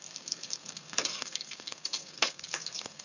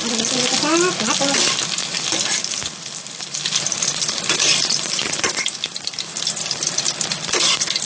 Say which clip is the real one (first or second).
second